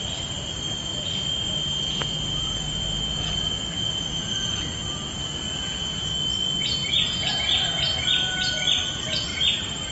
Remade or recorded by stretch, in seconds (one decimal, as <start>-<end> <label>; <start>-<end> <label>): 0.0-0.9 recorded; 0.9-6.1 remade; 6.1-9.9 recorded